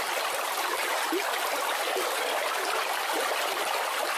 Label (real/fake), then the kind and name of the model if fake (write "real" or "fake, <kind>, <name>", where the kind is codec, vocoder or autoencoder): real